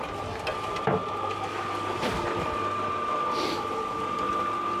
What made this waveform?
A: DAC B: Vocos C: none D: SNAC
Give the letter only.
C